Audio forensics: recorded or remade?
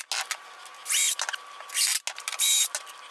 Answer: recorded